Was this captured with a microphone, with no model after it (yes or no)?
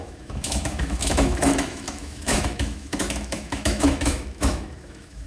no